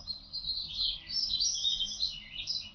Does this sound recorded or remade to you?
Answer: recorded